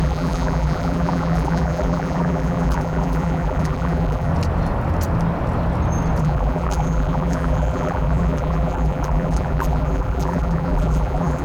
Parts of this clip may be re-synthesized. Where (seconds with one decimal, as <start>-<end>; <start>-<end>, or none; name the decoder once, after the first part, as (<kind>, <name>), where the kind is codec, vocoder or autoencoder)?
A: 0.0-4.3 (vocoder, BigVGAN v2); 6.2-11.4